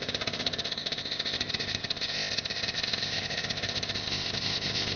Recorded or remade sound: remade